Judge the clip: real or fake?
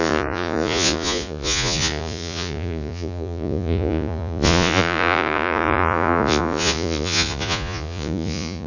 fake